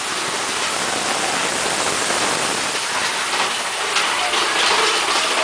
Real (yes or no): yes